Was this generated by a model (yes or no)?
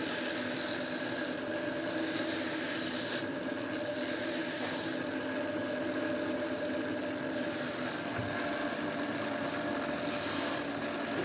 no